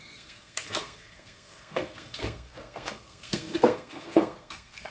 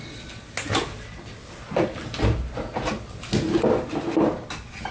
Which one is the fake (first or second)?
first